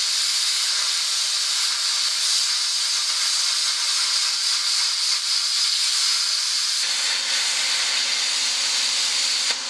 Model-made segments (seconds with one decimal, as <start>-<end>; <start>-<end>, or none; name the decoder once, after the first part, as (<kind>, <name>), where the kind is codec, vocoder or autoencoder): none